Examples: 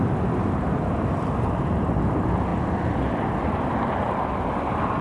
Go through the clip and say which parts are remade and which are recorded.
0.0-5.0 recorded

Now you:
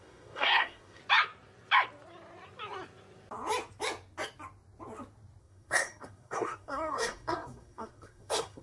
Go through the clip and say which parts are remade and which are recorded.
0.0-1.0 remade; 1.0-5.4 recorded; 5.4-8.6 remade

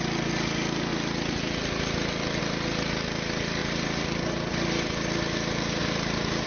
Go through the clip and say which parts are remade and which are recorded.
0.0-6.5 recorded

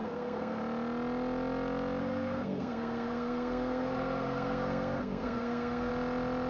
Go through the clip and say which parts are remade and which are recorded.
0.0-0.6 remade; 0.6-2.0 recorded; 2.0-5.9 remade; 5.9-6.5 recorded